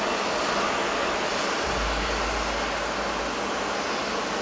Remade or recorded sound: recorded